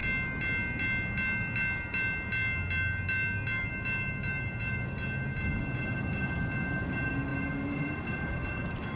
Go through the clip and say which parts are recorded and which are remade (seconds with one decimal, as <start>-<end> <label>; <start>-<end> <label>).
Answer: 0.0-9.0 recorded